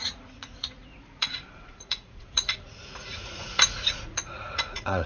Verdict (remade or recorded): remade